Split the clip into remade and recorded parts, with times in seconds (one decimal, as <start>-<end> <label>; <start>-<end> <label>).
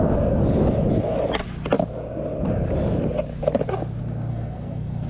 0.0-4.3 recorded; 4.3-5.1 remade